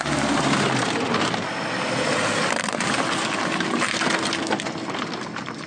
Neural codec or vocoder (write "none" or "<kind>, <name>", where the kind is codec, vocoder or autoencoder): none